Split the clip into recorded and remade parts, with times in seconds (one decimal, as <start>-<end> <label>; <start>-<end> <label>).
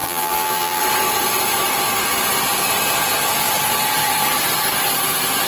0.0-0.8 remade; 0.8-5.5 recorded